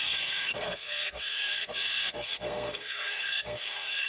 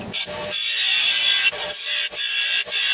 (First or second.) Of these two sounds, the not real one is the first